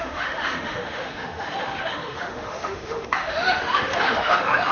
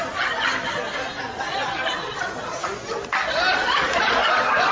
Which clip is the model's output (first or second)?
first